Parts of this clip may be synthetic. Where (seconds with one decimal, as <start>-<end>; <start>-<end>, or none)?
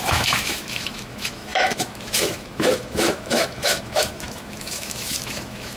0.0-5.8